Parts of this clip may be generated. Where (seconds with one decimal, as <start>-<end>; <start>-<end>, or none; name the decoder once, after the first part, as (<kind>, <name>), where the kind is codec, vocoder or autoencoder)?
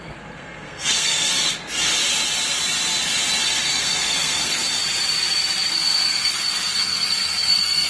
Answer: 0.0-1.3 (codec, SNAC); 3.5-4.6; 5.7-7.9